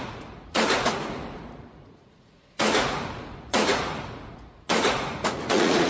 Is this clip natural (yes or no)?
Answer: no